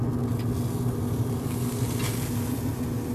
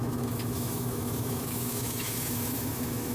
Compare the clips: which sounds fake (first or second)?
second